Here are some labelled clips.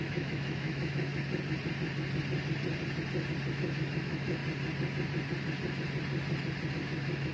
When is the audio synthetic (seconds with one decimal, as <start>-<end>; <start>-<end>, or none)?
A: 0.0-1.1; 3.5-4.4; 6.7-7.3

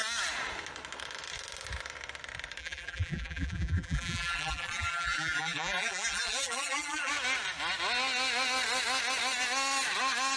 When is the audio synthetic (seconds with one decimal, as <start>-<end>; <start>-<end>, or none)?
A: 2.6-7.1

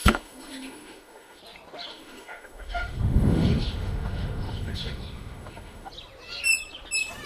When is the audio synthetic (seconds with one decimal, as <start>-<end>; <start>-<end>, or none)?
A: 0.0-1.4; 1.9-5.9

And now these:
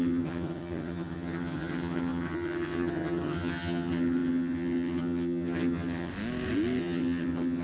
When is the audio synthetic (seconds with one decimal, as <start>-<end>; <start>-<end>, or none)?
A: 0.0-6.1; 6.8-7.6